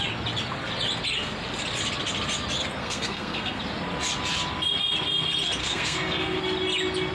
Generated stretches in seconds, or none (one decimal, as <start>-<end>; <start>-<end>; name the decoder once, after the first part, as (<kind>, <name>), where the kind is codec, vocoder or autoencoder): 2.8-3.6 (codec, SNAC); 5.6-6.4